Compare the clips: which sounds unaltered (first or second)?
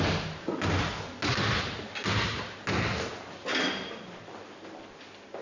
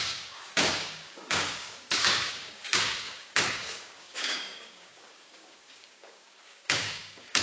first